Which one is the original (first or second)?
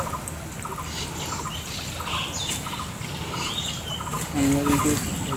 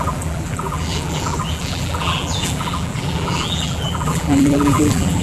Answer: first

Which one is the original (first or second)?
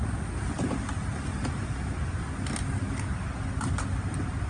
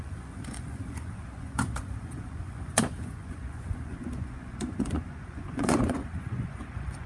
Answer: first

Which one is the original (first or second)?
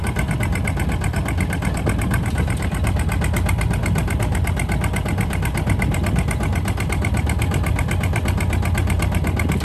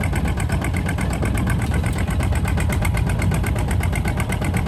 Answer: first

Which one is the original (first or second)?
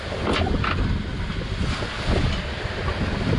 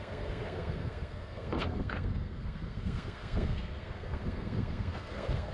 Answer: first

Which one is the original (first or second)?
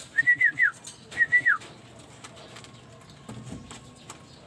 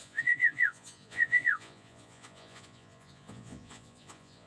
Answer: first